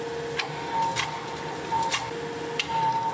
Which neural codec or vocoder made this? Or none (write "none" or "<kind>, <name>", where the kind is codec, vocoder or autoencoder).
none